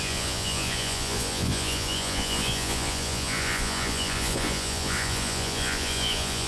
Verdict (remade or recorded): remade